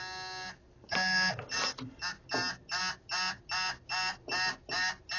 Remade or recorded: recorded